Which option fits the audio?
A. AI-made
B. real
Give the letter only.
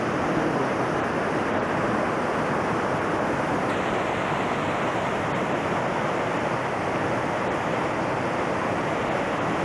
B